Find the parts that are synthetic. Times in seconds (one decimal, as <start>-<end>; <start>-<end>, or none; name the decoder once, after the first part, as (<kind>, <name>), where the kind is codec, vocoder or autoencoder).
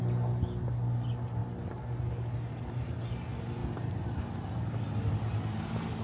none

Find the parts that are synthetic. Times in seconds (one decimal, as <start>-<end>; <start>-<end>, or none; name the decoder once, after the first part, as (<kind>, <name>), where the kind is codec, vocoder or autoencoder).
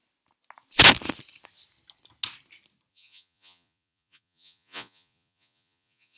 2.9-6.2 (vocoder, Vocos)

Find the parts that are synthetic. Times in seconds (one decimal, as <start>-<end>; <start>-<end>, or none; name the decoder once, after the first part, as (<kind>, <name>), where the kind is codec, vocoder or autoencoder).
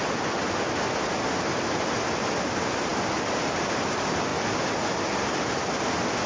none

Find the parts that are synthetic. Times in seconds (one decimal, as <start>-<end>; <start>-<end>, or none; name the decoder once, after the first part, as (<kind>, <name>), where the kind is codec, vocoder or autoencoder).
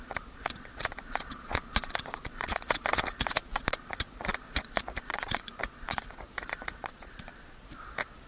0.0-8.3 (vocoder, Vocos)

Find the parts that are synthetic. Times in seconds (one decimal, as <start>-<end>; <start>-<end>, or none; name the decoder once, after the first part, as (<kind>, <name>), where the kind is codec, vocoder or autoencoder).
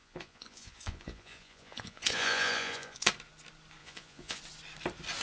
0.0-3.1 (vocoder, Vocos); 3.8-4.4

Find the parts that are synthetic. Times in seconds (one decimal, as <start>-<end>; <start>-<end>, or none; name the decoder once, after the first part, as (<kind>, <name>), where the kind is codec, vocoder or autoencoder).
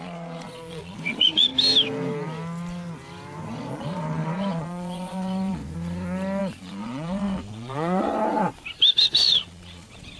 0.0-1.5 (vocoder, Vocos); 3.7-5.6; 6.4-8.1; 9.2-10.2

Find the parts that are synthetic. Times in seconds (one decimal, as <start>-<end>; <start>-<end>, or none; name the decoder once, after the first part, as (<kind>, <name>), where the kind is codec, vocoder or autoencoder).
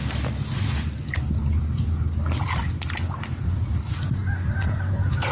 none